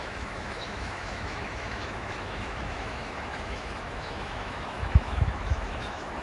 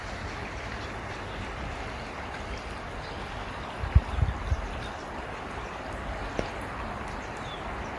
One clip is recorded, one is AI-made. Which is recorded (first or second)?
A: second